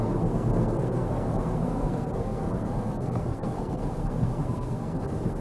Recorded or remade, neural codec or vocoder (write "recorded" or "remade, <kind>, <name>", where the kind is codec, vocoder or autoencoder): remade, codec, SNAC